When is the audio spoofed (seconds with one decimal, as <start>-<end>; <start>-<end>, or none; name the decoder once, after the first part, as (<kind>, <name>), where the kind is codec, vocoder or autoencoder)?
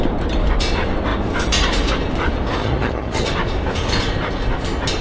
2.6-3.3 (vocoder, HiFi-GAN)